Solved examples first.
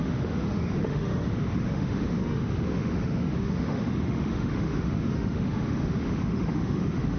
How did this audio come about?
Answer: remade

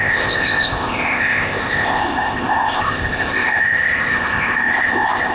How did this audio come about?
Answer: remade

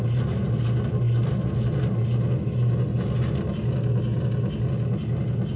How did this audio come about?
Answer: recorded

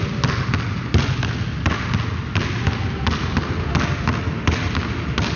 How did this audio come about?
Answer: recorded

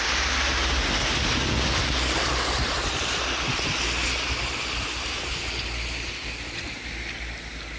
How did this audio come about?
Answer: recorded